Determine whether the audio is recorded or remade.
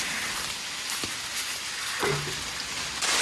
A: recorded